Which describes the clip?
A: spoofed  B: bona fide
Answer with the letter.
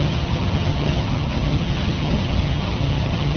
A